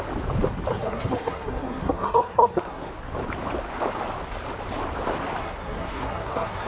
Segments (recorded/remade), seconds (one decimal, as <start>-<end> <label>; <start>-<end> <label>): 0.0-0.7 recorded; 0.7-2.9 remade; 2.9-5.4 recorded; 5.4-6.7 remade